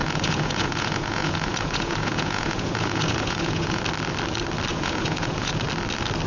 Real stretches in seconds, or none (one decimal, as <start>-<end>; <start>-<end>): 3.8-4.7; 5.5-6.3